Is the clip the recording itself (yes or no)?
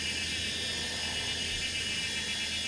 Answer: yes